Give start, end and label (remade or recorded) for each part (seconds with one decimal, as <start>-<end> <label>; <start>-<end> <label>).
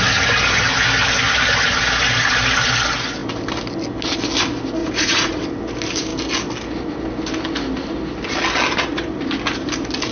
0.0-4.8 recorded; 4.8-5.4 remade; 5.4-10.1 recorded